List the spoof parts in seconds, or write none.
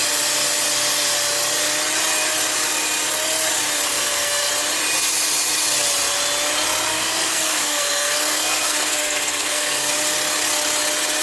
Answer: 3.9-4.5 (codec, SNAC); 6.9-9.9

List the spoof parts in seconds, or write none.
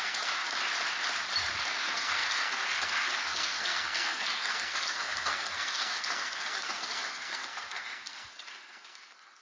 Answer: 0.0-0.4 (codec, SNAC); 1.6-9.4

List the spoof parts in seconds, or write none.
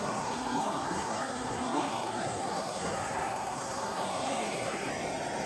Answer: 0.0-4.9 (codec, SNAC)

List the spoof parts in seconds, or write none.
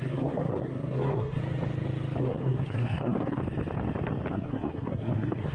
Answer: 0.0-1.4 (codec, SNAC); 2.2-3.4; 4.3-5.5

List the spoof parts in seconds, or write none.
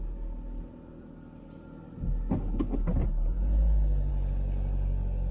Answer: none